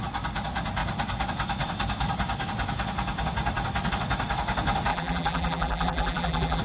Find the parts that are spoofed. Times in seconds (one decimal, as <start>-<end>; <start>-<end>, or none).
4.9-6.6